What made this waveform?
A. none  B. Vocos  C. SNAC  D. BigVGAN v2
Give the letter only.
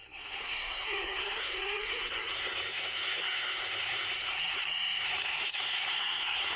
C